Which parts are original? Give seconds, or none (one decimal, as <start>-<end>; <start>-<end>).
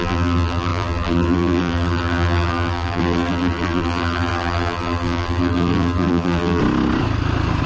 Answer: 6.6-7.7